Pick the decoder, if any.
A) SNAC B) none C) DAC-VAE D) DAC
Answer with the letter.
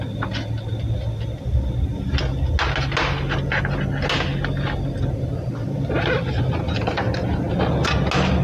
B